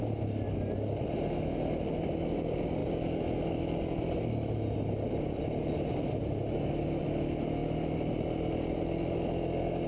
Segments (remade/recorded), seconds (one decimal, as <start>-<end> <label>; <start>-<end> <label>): 0.0-9.9 recorded